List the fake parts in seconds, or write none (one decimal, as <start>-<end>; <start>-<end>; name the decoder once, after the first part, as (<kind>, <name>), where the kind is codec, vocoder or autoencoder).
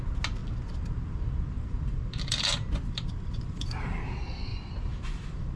0.4-3.8 (vocoder, BigVGAN v2); 4.5-5.6